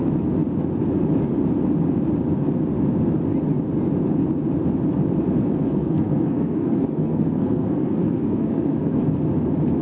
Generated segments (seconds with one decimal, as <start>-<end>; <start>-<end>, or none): 5.4-9.0